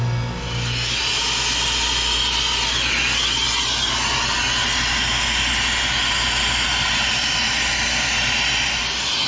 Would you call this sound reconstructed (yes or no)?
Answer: no